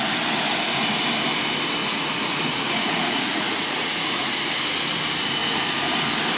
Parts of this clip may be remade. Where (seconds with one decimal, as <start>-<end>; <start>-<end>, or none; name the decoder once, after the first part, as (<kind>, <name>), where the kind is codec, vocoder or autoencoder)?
1.8-4.5 (vocoder, Vocos)